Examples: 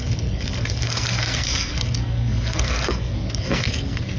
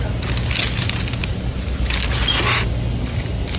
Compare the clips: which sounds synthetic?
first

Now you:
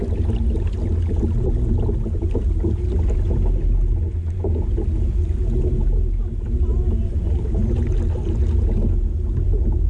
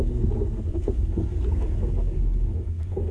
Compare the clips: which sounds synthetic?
second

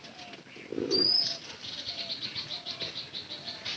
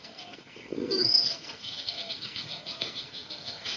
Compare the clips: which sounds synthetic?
second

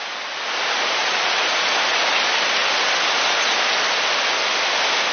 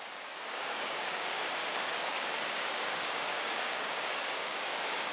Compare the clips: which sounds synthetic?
second